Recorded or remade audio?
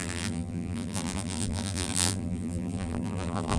remade